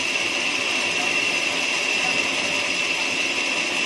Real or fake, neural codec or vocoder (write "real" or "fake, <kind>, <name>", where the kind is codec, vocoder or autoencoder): real